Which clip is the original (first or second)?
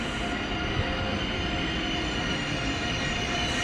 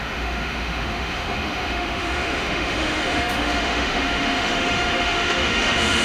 first